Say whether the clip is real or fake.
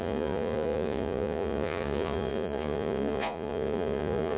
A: fake